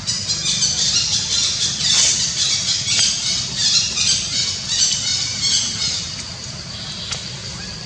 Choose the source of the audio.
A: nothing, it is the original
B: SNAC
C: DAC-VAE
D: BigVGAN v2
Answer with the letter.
A